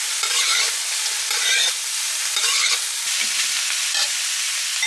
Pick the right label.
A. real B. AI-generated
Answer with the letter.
A